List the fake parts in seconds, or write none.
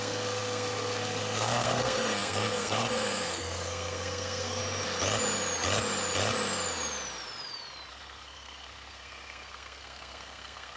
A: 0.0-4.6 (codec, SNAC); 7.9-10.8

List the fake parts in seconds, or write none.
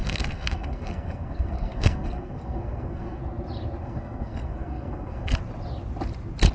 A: 0.0-3.2 (codec, SNAC); 3.8-5.4